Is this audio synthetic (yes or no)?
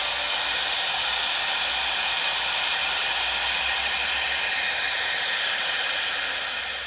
no